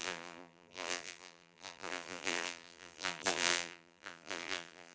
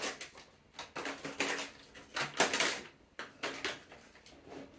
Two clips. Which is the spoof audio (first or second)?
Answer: first